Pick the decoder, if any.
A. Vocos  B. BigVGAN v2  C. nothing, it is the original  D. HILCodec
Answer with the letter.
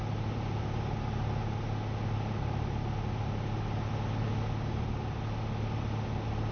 C